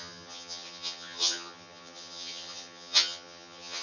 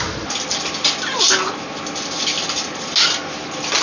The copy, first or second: first